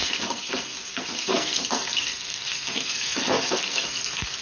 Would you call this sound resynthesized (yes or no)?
yes